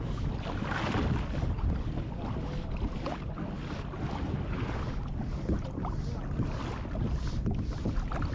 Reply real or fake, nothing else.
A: real